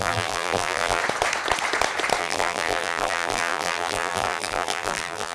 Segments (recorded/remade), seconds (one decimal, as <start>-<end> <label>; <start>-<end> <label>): 0.0-1.0 remade; 1.0-2.2 recorded; 2.2-5.3 remade